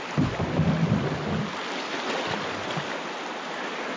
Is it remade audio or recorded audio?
recorded